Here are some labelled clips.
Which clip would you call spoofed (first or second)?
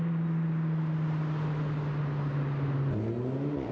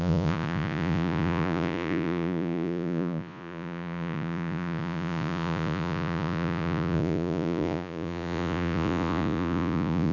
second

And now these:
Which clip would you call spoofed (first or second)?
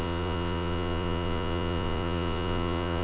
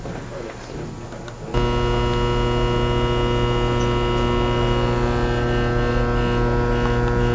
first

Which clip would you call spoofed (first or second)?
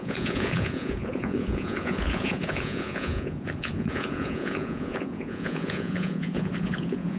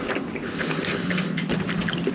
first